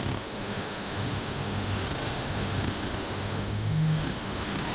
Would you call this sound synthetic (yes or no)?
yes